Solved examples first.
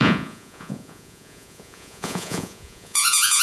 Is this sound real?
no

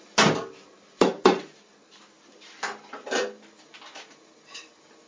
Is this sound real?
yes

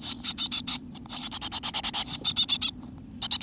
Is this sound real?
yes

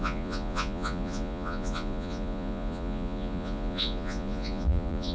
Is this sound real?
no